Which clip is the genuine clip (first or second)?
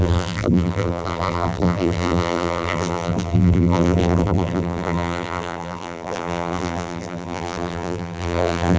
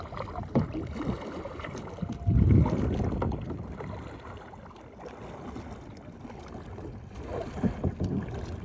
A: second